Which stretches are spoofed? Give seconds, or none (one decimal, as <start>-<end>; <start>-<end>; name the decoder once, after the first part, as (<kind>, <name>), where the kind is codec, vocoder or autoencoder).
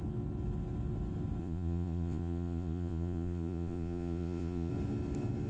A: 1.4-4.7 (vocoder, Vocos)